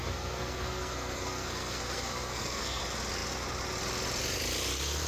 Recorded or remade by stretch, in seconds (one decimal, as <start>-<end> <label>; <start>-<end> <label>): 0.0-2.8 remade; 2.8-5.1 recorded